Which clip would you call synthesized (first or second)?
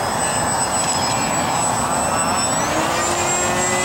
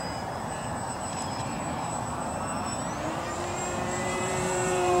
second